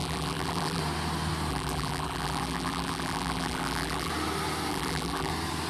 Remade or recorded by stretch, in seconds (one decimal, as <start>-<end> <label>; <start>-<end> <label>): 0.0-0.8 remade; 0.8-1.5 recorded; 1.5-4.1 remade; 4.1-4.7 recorded; 4.7-5.3 remade; 5.3-5.7 recorded